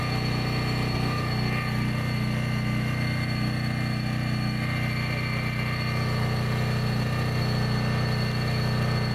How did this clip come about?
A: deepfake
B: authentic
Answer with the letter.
B